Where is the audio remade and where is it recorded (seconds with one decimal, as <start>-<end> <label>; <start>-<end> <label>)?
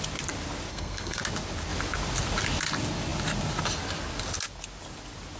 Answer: 0.0-0.7 recorded; 0.7-1.2 remade; 1.2-5.4 recorded